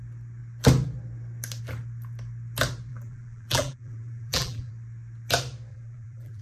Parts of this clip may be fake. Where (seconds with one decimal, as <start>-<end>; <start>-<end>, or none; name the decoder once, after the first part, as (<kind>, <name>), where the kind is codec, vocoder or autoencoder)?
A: 2.9-4.7 (vocoder, BigVGAN v2); 5.7-6.4